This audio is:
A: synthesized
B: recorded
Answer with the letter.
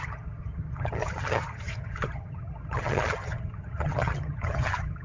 A